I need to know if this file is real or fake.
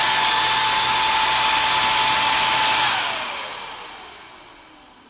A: real